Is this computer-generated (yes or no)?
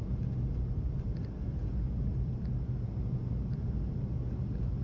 no